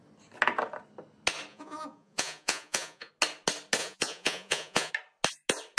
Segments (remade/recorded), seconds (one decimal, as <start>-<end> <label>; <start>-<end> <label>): 0.0-1.5 recorded; 1.5-3.1 remade; 3.1-3.8 recorded; 3.8-4.9 remade; 4.9-5.8 recorded